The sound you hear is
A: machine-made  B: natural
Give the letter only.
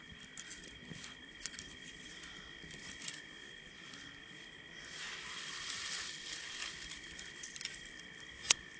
B